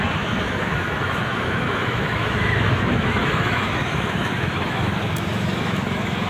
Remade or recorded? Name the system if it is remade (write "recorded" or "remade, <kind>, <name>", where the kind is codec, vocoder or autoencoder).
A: remade, autoencoder, DAC-VAE